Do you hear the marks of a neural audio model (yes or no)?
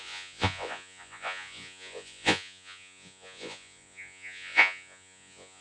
yes